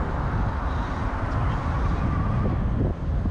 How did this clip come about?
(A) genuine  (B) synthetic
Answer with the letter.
A